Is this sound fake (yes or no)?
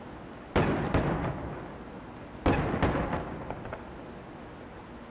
no